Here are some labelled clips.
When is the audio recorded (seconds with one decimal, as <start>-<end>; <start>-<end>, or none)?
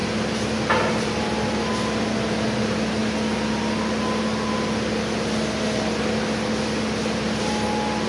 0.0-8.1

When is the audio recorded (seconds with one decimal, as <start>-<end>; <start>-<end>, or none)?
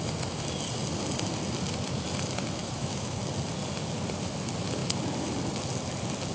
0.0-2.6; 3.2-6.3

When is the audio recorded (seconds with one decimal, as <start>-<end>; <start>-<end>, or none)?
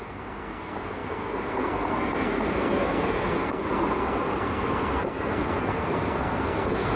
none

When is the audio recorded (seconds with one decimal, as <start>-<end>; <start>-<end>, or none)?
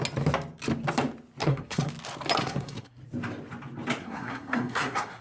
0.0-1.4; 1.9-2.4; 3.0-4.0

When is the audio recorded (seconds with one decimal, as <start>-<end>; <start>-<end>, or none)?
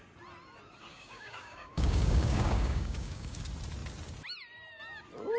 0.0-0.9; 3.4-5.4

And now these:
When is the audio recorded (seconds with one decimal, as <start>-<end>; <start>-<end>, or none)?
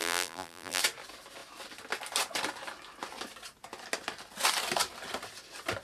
0.8-5.8